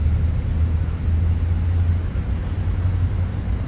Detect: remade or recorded recorded